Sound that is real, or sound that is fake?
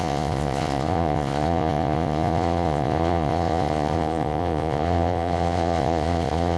fake